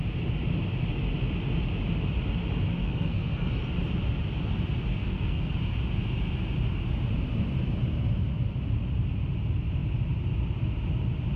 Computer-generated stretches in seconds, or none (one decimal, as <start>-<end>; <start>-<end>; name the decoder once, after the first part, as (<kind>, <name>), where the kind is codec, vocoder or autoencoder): 2.8-3.5 (codec, SNAC); 4.9-5.5